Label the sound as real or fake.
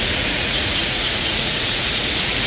fake